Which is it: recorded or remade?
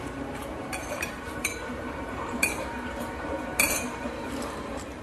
remade